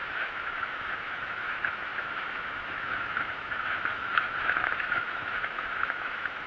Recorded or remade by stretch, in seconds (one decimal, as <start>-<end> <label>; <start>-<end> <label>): 0.0-6.5 remade